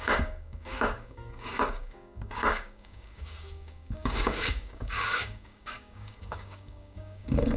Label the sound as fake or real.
fake